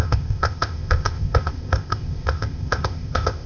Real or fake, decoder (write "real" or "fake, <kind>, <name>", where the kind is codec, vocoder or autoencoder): fake, codec, ZipCodec